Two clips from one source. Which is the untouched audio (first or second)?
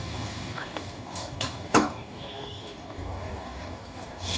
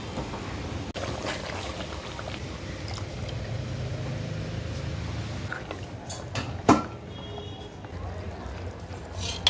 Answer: second